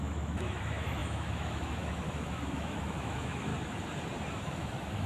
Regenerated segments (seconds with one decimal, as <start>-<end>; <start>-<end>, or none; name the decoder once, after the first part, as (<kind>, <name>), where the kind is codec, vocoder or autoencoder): 0.0-3.5 (autoencoder, DAC-VAE); 4.3-5.1